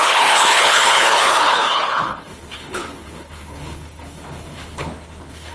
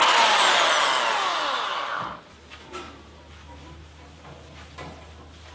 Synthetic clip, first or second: first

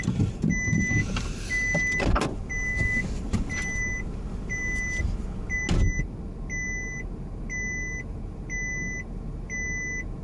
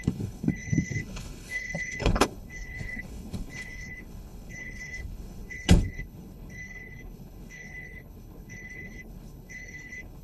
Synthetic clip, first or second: second